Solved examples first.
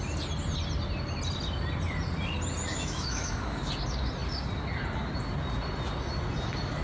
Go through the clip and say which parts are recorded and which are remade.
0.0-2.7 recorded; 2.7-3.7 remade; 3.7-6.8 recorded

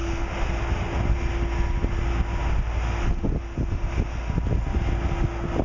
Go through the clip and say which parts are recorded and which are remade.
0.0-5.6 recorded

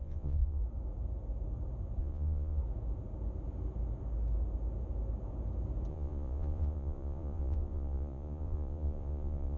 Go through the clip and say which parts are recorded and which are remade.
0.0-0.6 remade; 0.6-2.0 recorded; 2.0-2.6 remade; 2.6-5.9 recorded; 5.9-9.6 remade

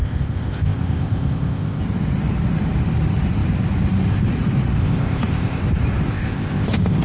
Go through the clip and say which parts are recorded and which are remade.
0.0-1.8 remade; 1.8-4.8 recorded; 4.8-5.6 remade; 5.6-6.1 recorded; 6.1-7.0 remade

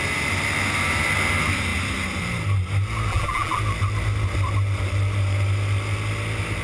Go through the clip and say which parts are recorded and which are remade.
0.0-3.1 recorded; 3.1-3.6 remade; 3.6-6.6 recorded

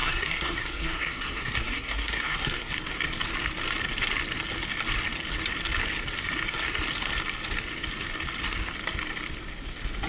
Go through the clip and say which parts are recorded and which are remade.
0.0-2.7 remade; 2.7-10.1 recorded

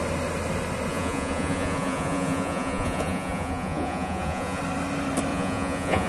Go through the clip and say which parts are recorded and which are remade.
0.0-0.9 recorded; 0.9-4.6 remade; 4.6-5.3 recorded; 5.3-6.1 remade